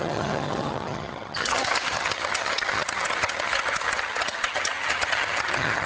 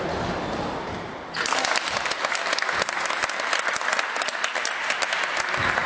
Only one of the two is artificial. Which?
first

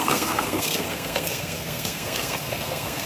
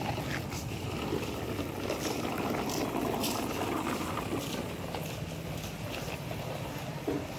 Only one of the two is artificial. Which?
first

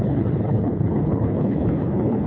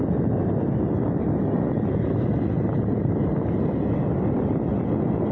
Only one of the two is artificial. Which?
first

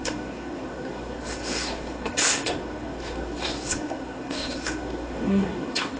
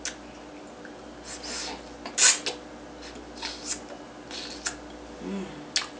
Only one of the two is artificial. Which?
first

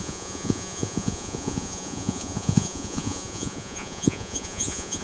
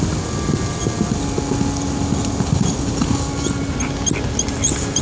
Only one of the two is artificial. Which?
first